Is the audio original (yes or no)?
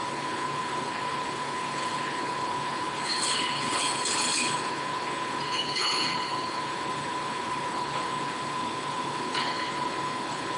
no